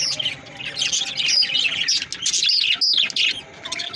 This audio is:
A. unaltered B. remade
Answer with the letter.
A